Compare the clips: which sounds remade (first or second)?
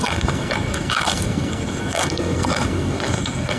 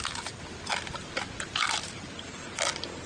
first